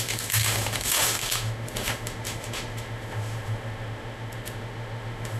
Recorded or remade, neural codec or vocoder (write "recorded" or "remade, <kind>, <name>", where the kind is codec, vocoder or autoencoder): remade, autoencoder, DAC-VAE